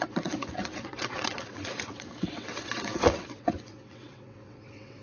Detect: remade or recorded remade